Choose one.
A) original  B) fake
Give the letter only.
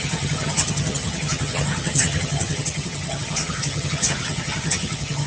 B